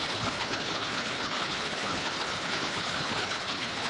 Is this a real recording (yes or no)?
no